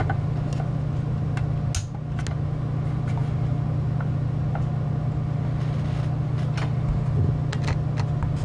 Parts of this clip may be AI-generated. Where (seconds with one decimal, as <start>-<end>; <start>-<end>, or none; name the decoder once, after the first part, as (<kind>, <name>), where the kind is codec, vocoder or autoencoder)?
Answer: none